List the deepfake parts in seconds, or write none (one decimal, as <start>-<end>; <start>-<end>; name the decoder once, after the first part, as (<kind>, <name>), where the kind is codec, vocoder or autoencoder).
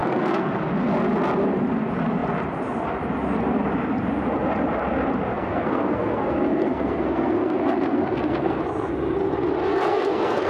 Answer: 0.0-0.6 (codec, SNAC); 5.3-8.6; 9.6-10.5